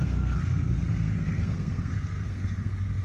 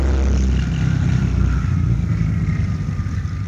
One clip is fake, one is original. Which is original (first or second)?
second